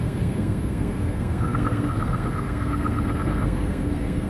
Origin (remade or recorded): remade